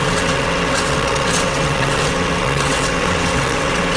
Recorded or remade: remade